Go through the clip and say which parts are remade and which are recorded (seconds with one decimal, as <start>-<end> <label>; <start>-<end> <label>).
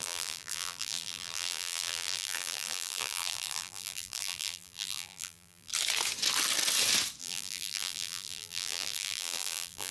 0.0-5.7 remade; 5.7-7.2 recorded; 7.2-9.9 remade